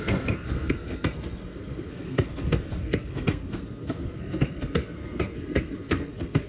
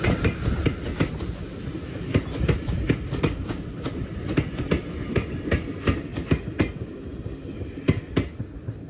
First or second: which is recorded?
second